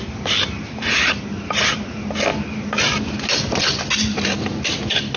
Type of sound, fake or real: real